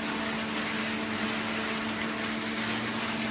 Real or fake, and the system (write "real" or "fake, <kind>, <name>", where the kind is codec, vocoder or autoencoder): real